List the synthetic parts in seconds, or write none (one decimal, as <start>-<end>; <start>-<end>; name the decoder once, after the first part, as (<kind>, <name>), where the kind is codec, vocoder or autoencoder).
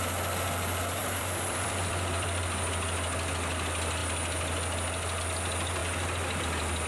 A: 1.0-2.4 (vocoder, BigVGAN v2)